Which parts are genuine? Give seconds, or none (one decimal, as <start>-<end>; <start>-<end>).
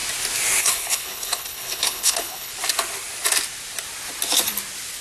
0.0-0.6; 2.5-5.0